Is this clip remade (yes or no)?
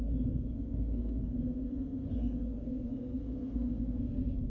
yes